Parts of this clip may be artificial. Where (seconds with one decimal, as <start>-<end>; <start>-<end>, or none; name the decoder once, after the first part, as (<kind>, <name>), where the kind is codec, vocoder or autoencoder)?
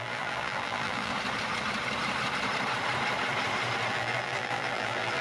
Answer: 0.0-1.1 (vocoder, BigVGAN v2); 3.9-5.2